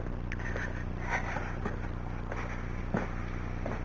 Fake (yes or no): no